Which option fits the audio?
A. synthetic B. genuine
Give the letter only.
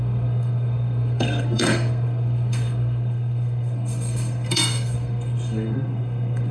A